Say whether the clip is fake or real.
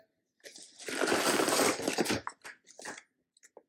real